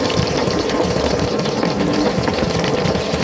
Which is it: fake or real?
real